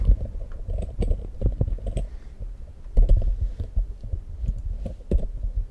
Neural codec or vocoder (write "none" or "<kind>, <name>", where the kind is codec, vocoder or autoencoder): none